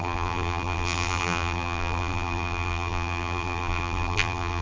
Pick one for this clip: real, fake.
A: fake